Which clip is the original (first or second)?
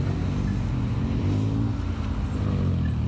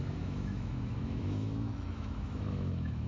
first